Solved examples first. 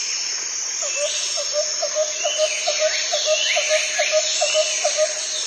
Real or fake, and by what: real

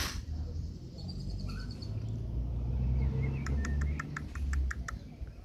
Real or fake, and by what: real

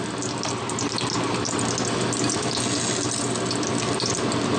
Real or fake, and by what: real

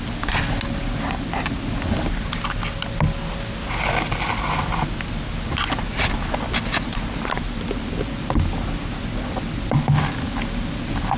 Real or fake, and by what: real